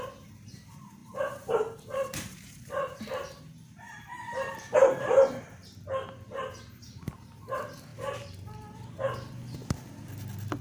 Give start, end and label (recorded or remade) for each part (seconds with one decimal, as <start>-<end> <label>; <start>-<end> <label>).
0.0-5.6 remade; 5.6-6.6 recorded; 6.6-7.9 remade; 7.9-10.6 recorded